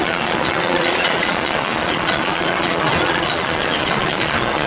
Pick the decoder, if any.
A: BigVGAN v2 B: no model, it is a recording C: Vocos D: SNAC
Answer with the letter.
C